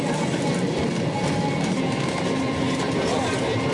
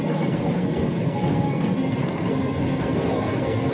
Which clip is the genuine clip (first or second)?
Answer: first